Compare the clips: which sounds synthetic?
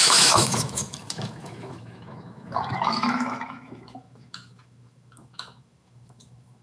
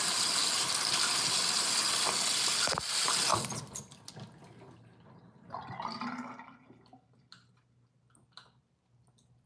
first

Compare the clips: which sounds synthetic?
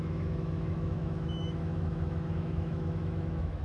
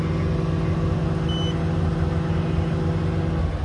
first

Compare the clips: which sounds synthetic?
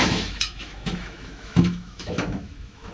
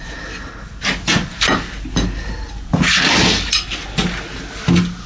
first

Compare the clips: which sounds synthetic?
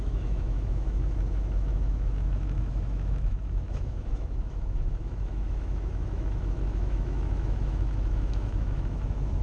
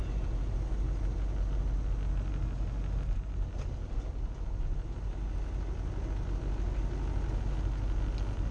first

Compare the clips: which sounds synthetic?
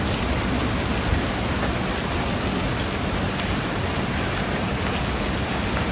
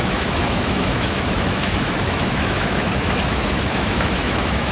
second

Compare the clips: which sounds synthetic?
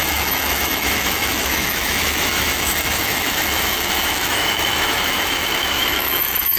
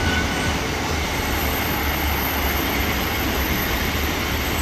first